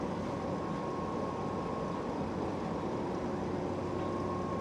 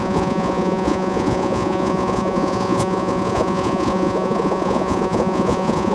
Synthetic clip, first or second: second